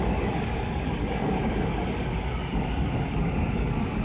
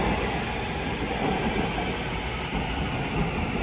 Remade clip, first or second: first